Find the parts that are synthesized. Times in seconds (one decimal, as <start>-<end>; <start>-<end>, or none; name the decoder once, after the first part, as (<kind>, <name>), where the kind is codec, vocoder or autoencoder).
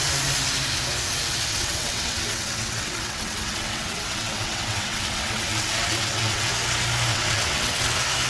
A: 1.5-6.5 (vocoder, WaveNeXt); 7.1-7.9